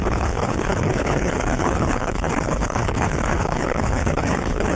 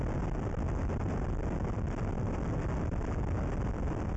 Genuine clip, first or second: second